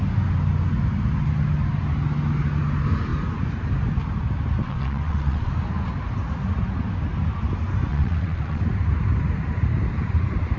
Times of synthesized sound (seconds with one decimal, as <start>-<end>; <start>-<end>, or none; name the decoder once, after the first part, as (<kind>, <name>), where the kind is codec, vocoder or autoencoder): 4.6-5.5 (vocoder, WaveNeXt); 7.9-8.6